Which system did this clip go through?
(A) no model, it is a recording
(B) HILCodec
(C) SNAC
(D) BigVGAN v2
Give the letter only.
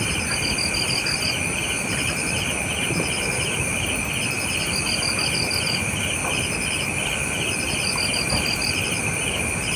A